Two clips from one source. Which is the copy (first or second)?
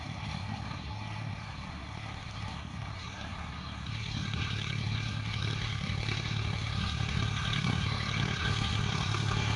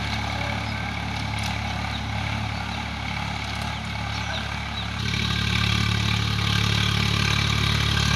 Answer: first